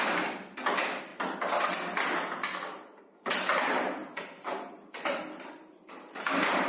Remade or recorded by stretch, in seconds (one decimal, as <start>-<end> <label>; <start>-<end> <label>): 0.0-1.1 remade; 1.1-3.0 recorded; 3.0-4.0 remade; 4.0-4.7 recorded; 4.7-6.7 remade